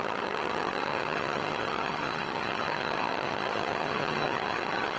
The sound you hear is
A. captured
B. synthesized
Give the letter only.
B